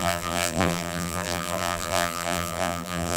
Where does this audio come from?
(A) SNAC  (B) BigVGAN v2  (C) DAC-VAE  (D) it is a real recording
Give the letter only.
B